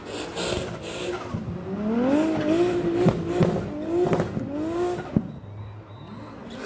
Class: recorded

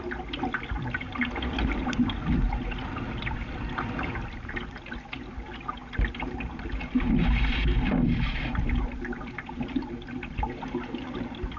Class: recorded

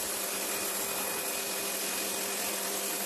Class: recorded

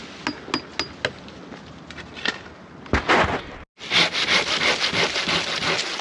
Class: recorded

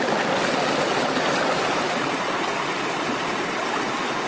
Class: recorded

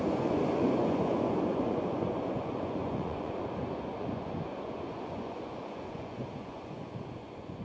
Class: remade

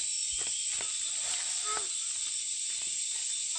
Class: recorded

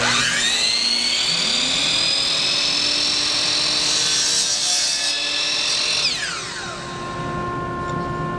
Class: recorded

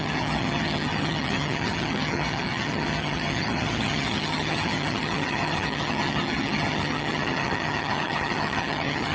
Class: remade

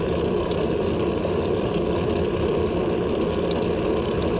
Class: recorded